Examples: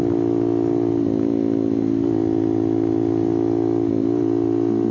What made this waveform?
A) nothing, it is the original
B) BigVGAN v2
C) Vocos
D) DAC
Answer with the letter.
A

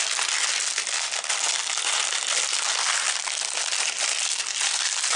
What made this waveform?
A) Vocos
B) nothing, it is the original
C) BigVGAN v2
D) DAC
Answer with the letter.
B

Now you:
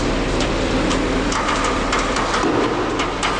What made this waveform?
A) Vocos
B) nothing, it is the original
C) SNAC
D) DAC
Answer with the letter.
B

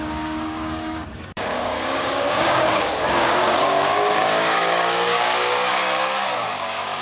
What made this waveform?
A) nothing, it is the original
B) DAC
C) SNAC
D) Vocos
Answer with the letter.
B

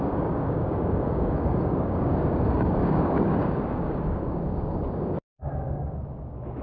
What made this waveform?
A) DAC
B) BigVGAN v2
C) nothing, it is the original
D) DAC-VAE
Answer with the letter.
A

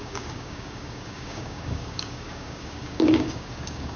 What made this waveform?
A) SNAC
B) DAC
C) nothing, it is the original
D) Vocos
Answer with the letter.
B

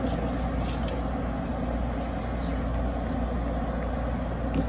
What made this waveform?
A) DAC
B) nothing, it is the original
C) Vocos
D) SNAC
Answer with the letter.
B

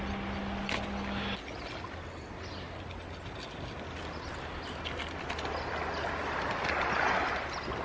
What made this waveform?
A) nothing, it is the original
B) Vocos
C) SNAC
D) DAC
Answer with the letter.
A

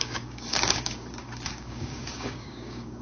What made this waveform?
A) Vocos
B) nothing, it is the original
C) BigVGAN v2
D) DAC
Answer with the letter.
D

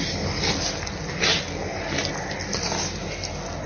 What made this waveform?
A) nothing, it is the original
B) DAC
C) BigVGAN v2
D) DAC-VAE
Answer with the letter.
A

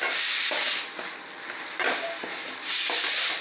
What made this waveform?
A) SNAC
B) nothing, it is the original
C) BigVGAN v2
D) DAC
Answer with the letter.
B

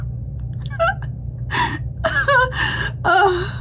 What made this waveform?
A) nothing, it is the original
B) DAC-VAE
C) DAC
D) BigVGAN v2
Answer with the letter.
A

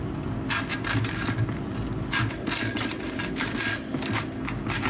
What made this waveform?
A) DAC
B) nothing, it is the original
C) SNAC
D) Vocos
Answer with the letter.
B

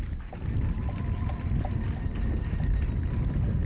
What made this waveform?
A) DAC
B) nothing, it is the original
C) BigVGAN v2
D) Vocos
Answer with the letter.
B